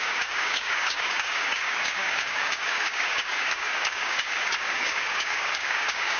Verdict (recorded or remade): remade